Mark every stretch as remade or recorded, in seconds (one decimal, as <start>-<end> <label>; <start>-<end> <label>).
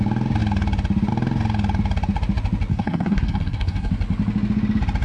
0.0-2.7 recorded; 2.7-3.9 remade; 3.9-5.0 recorded